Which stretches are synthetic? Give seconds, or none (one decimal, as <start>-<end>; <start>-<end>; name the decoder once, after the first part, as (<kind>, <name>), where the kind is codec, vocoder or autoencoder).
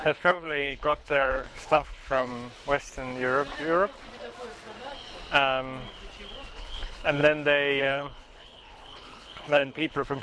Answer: 0.0-2.3 (codec, HILCodec); 6.5-7.2; 7.8-10.2